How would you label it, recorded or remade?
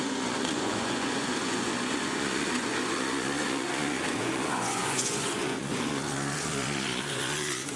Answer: remade